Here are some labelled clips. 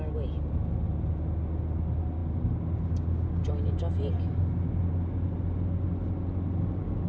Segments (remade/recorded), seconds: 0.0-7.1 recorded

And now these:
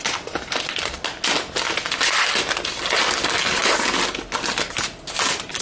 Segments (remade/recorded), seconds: 0.0-5.6 recorded

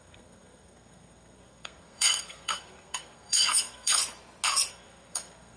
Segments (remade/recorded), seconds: 0.0-4.0 remade; 4.0-4.7 recorded; 4.7-5.6 remade

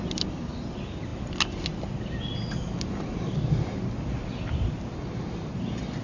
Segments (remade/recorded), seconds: 0.0-6.0 recorded

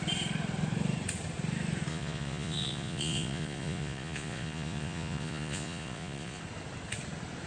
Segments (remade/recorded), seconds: 0.0-1.9 recorded; 1.9-6.4 remade; 6.4-7.5 recorded